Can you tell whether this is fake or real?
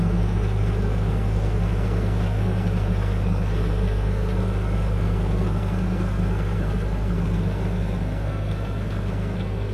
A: fake